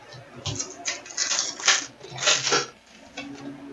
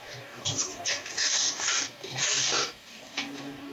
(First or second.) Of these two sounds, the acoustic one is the first